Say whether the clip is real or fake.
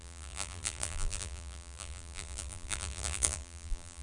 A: fake